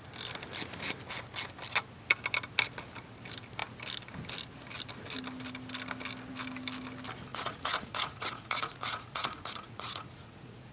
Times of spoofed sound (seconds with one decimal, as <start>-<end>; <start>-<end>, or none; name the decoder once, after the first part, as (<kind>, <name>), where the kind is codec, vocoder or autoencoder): 7.3-10.7 (vocoder, Vocos)